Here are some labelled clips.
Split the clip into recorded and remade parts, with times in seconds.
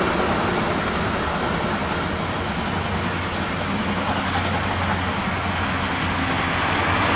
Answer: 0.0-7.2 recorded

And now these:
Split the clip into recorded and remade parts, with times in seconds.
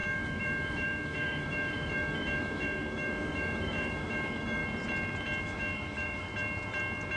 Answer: 0.0-4.6 remade; 4.6-5.4 recorded; 5.4-6.3 remade; 6.3-7.2 recorded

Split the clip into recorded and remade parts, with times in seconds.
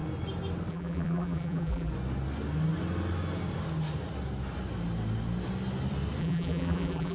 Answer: 0.0-0.7 recorded; 0.7-1.9 remade; 1.9-6.2 recorded; 6.2-7.1 remade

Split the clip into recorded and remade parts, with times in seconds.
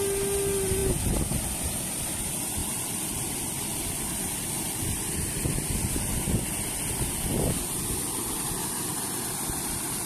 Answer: 0.0-2.6 recorded; 2.6-5.9 remade; 5.9-8.9 recorded; 8.9-10.1 remade